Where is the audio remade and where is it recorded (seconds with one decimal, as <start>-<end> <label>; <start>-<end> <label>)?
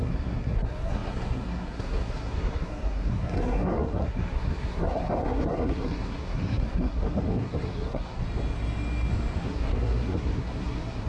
0.0-8.2 remade; 8.2-9.4 recorded; 9.4-11.1 remade